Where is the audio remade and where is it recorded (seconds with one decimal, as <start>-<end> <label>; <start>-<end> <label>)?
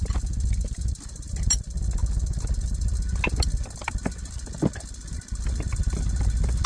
0.0-6.7 recorded